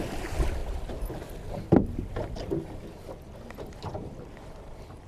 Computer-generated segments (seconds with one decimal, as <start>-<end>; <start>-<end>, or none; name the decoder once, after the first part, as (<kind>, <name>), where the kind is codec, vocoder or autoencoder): none